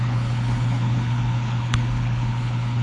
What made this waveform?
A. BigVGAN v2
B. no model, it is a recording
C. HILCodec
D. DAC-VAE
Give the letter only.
C